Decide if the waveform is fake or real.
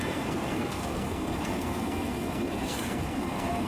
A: fake